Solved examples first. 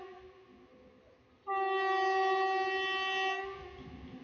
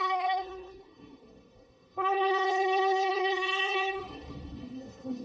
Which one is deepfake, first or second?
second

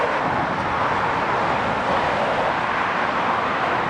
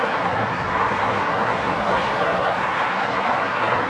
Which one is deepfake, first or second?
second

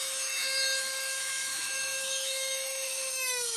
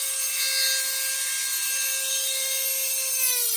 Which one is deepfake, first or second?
first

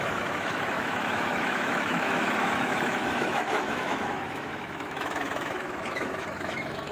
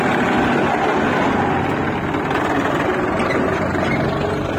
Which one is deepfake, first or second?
first